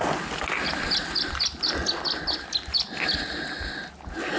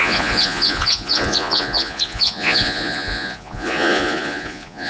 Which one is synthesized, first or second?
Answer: second